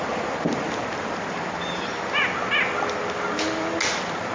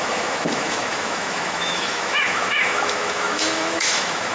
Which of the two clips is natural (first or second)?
first